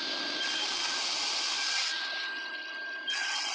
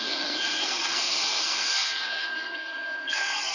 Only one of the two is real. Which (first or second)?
first